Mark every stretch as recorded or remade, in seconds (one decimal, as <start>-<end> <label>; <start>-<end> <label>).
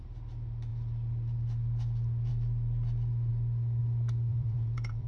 0.0-4.3 recorded; 4.3-5.1 remade